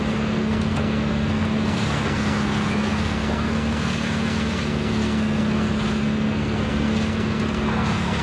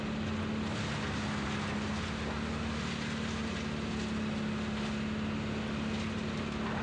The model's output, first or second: first